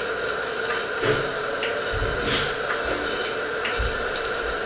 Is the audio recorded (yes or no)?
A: yes